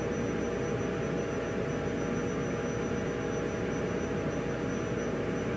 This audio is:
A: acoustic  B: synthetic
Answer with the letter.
A